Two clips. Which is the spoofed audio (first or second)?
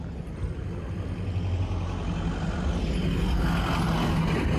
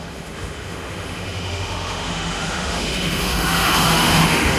second